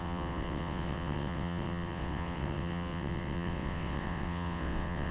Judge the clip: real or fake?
fake